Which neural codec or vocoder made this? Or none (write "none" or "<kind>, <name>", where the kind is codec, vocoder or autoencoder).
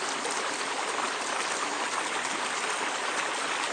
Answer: none